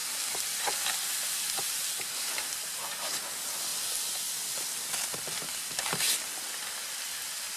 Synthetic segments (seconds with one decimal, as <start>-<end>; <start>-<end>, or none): none